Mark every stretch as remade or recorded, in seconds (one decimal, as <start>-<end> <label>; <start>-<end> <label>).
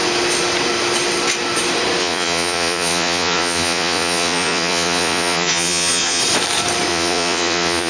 0.0-2.0 recorded; 2.0-6.2 remade; 6.2-6.9 recorded; 6.9-7.9 remade